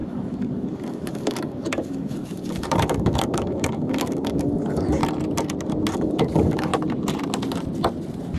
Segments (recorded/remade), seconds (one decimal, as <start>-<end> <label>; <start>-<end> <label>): 0.0-5.0 remade; 5.0-5.9 recorded; 5.9-6.7 remade; 6.7-8.4 recorded